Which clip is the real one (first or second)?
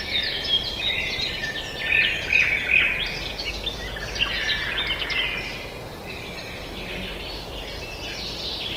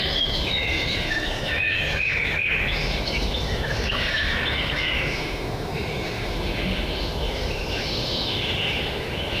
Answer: first